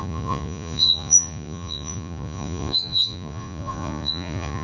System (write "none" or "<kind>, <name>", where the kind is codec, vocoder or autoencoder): vocoder, Vocos